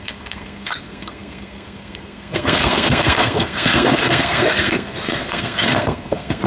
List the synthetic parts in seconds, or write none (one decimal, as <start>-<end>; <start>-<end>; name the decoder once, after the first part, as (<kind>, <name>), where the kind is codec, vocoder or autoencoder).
0.0-6.5 (codec, SNAC)